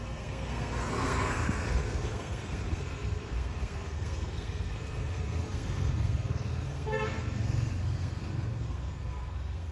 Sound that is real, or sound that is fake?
fake